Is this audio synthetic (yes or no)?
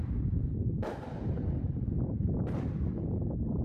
no